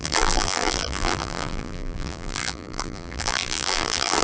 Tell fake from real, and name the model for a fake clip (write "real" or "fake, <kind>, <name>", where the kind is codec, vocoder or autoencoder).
fake, vocoder, BigVGAN v2